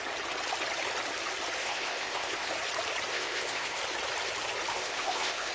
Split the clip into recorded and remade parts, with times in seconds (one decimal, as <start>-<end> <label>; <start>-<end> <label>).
0.0-1.6 recorded; 1.6-2.5 remade; 2.5-3.1 recorded; 3.1-3.8 remade; 3.8-4.7 recorded; 4.7-5.5 remade